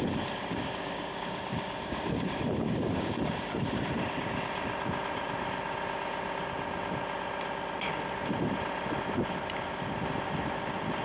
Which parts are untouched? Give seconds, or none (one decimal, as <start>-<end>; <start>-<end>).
0.0-0.4; 3.1-11.0